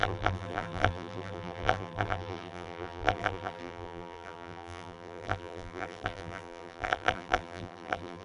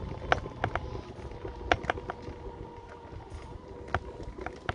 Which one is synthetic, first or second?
first